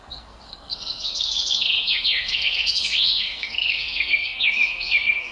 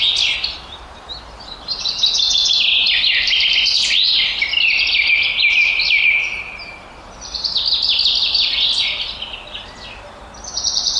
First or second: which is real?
second